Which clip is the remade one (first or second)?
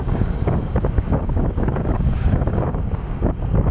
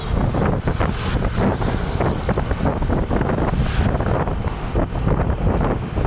first